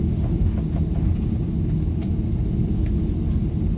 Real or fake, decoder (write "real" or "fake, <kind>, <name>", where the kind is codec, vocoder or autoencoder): real